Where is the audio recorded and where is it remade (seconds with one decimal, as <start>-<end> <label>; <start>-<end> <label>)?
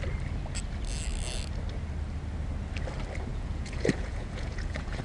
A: 0.0-3.3 recorded; 3.3-5.0 remade